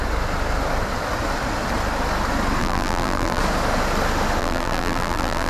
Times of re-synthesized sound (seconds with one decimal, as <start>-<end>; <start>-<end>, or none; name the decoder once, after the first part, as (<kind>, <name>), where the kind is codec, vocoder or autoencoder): 2.6-3.4 (vocoder, BigVGAN v2); 4.4-5.5